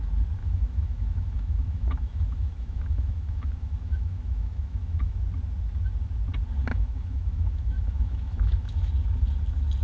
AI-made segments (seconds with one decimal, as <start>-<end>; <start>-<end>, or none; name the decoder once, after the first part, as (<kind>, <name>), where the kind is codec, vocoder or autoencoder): 0.4-5.2 (autoencoder, DAC-VAE); 6.7-8.9